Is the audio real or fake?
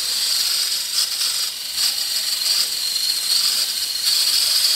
real